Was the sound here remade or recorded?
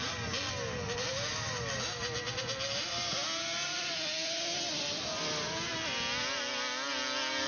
recorded